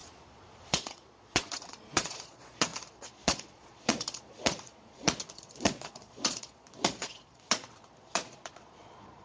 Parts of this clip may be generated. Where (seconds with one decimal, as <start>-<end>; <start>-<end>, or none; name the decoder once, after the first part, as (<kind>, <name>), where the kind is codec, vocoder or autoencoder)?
0.0-9.2 (vocoder, Vocos)